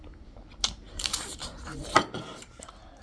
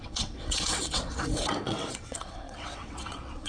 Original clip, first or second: first